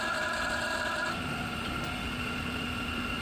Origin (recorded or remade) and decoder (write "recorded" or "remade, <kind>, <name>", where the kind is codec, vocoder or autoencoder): recorded